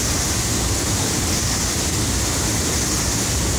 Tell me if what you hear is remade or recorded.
recorded